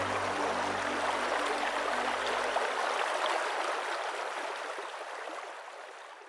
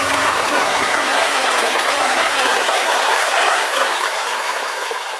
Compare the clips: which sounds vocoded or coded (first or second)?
second